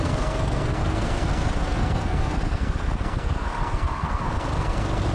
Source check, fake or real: fake